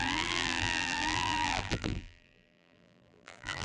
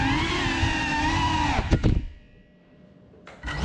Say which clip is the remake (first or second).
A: first